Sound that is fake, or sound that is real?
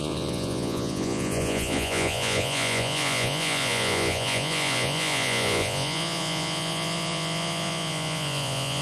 fake